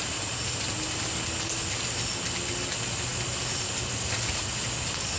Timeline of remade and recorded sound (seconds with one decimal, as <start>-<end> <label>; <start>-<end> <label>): 0.0-5.2 recorded